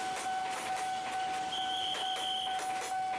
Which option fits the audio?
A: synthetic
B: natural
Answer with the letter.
B